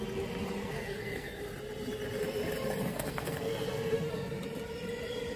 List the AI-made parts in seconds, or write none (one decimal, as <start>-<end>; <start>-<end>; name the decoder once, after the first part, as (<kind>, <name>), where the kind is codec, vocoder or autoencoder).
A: 0.6-1.4 (codec, SNAC); 2.9-4.1